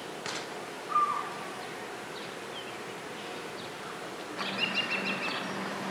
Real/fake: real